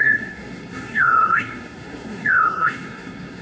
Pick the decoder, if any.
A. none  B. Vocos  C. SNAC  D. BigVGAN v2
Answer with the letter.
C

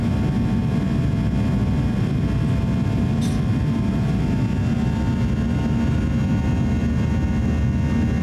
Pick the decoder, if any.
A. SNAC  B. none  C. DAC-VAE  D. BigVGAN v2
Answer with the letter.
B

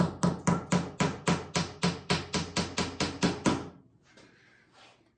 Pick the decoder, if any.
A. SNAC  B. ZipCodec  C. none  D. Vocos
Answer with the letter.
C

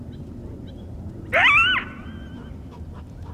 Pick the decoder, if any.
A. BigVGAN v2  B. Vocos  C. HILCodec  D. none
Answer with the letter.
D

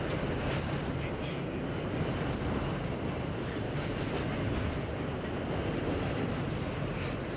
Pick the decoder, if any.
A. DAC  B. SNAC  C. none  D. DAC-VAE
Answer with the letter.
C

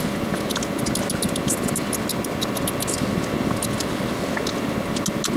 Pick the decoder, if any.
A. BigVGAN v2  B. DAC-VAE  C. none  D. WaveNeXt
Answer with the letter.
C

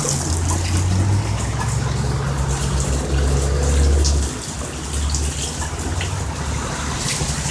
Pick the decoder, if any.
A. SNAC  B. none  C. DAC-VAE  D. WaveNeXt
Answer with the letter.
B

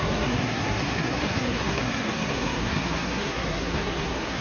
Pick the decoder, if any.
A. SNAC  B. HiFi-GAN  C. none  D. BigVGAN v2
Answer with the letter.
A